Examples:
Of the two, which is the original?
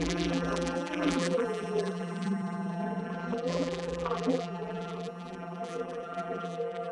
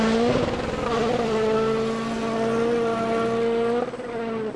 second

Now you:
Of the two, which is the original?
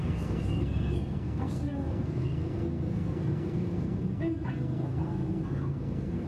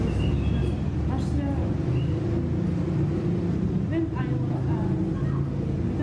second